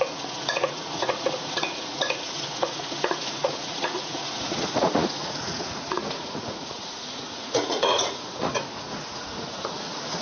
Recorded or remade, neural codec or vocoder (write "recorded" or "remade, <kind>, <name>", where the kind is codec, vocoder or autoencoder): remade, vocoder, Vocos